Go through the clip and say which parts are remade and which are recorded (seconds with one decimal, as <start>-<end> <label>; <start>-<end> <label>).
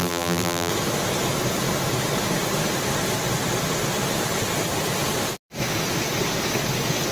0.0-0.7 remade; 0.7-7.1 recorded